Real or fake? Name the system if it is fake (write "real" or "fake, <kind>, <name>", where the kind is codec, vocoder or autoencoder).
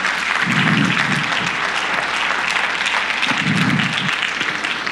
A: real